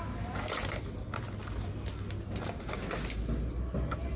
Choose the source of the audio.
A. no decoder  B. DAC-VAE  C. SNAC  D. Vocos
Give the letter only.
A